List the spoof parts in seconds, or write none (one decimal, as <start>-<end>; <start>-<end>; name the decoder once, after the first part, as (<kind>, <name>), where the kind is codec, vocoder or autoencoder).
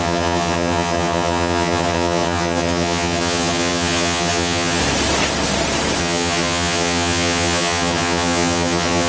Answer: 0.0-4.8 (vocoder, HiFi-GAN); 6.0-9.1